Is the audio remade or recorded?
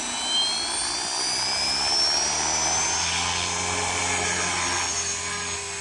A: recorded